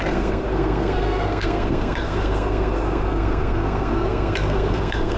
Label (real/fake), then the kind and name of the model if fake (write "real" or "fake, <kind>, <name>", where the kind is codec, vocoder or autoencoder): fake, codec, SNAC